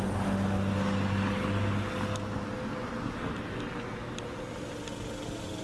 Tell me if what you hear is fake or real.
real